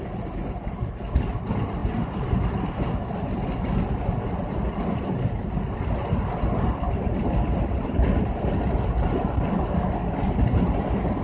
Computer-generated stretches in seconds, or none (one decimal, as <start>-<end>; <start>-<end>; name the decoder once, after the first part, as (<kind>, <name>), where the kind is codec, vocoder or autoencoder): none